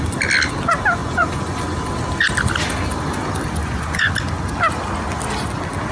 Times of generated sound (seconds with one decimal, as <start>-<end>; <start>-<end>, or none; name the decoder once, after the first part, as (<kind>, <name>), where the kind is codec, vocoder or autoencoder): 1.0-1.6 (vocoder, Vocos); 3.6-4.1